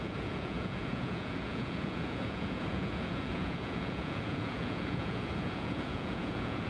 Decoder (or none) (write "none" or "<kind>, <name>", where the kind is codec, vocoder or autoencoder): vocoder, Vocos